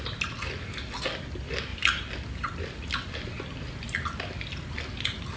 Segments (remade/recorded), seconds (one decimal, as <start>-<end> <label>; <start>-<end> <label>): 0.0-5.4 recorded